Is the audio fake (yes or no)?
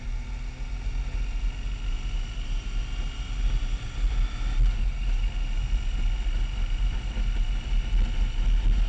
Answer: no